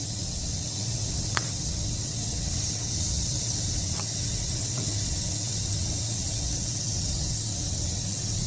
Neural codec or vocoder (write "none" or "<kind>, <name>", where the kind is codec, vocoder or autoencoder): vocoder, WaveNeXt